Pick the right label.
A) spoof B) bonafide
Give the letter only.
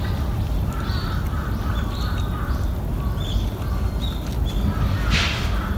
B